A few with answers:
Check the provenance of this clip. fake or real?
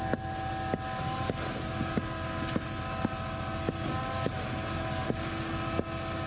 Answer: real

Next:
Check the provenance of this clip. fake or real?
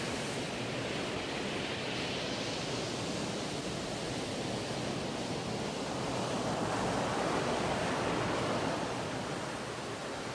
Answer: real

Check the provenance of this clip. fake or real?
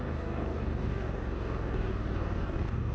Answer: fake